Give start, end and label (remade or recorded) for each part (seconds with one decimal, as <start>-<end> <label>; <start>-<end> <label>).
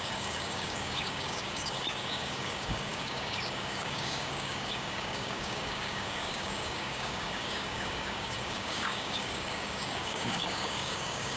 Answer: 0.0-11.4 remade